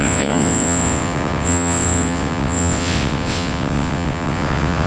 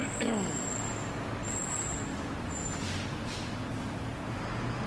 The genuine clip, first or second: second